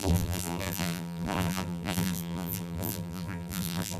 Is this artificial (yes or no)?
yes